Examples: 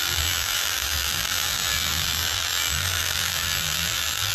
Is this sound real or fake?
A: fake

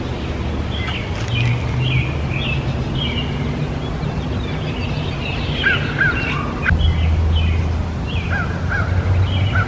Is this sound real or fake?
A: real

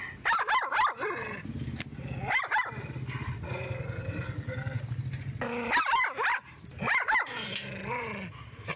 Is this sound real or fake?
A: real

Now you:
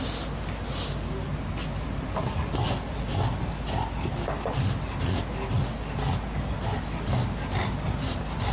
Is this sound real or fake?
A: real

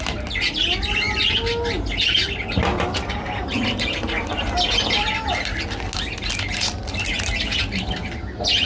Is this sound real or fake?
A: real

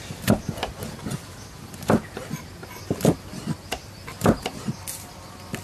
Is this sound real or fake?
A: real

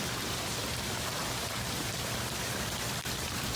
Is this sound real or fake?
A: fake